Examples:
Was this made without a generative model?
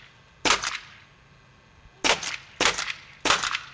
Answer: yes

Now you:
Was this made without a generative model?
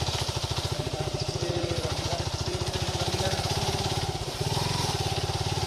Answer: no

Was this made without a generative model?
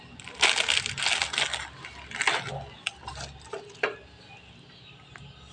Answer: yes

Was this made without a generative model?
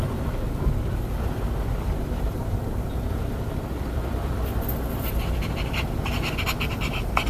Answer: no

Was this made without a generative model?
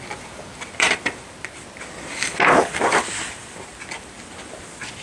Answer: yes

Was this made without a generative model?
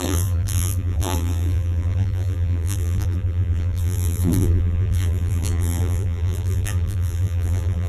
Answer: no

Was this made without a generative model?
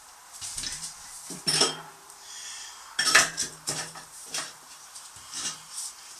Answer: no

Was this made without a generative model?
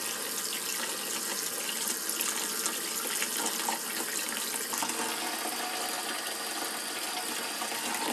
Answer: yes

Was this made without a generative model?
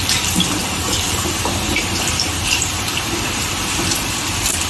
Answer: no